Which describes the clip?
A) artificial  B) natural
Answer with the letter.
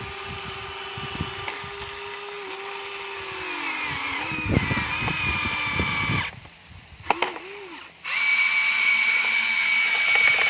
A